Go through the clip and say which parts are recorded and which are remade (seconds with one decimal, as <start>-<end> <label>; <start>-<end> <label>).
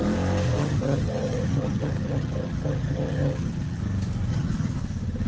0.0-0.6 recorded; 0.6-3.8 remade; 3.8-4.3 recorded; 4.3-4.8 remade; 4.8-5.3 recorded